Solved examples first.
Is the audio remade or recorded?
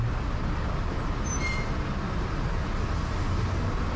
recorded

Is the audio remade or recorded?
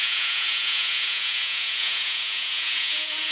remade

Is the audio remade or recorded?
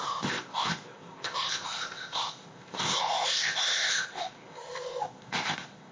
remade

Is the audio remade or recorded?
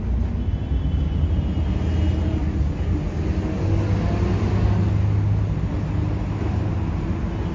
recorded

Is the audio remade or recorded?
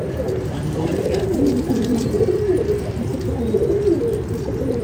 remade